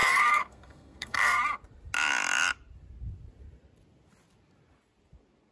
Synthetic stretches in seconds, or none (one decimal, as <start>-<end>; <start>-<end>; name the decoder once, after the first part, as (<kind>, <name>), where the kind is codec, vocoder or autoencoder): 0.0-1.4 (codec, SNAC)